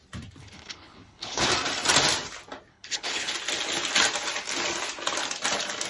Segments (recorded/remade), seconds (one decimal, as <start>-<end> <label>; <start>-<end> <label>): 0.0-0.4 recorded; 0.4-1.5 remade; 1.5-2.7 recorded; 2.7-3.3 remade; 3.3-5.9 recorded

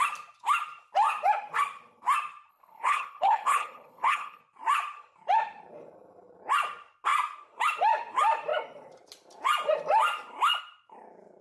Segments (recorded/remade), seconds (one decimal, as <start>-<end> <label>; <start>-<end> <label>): 0.0-2.5 recorded; 2.5-4.4 remade; 4.4-11.4 recorded

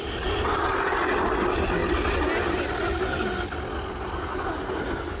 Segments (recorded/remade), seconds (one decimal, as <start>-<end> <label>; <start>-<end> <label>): 0.0-5.2 recorded